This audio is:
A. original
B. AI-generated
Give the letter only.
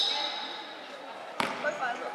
A